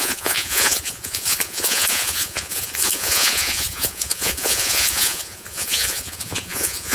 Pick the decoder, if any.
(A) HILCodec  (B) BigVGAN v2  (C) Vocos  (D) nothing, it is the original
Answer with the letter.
C